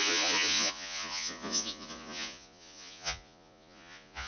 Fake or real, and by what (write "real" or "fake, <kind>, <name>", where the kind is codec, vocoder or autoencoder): fake, vocoder, Vocos